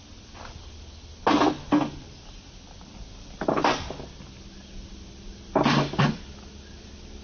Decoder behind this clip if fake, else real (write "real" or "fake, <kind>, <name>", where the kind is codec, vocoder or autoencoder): real